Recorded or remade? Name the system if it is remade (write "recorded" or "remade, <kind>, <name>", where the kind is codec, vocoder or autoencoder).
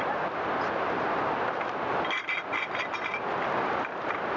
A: recorded